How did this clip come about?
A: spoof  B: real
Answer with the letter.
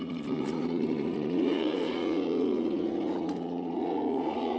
A